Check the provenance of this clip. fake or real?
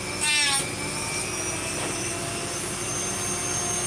real